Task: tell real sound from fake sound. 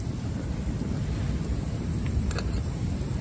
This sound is real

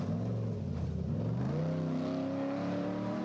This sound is real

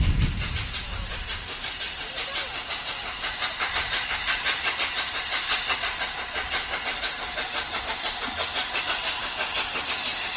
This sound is real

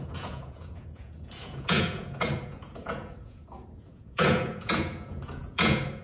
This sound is fake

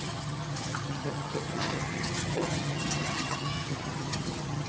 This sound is fake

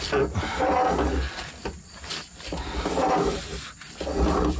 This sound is real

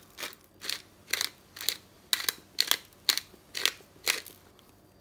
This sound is real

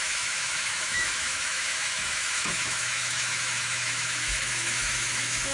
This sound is fake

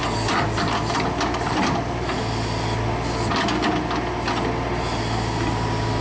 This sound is real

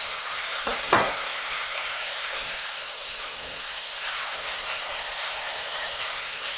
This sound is fake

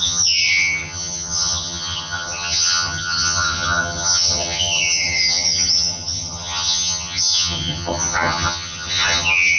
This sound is fake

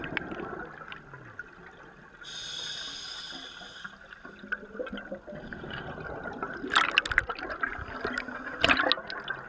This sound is real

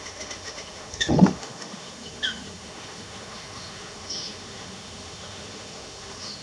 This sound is fake